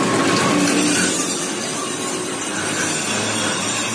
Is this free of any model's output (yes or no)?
yes